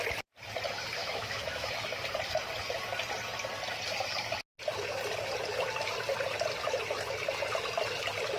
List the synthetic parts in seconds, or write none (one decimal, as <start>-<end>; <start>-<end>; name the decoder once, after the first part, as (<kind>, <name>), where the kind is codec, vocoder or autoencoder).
1.0-1.7 (autoencoder, DAC-VAE)